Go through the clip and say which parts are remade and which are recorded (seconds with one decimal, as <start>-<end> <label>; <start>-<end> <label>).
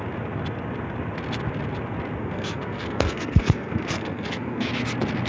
0.0-2.2 recorded; 2.2-4.7 remade; 4.7-5.3 recorded